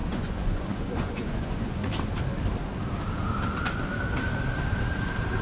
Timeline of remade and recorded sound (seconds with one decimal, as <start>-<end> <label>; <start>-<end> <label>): 0.0-1.9 remade; 1.9-5.4 recorded